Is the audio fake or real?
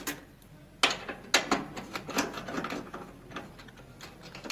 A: real